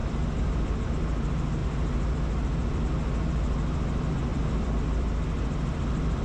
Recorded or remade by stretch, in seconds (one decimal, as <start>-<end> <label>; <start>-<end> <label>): 0.0-0.9 remade; 0.9-4.3 recorded; 4.3-6.2 remade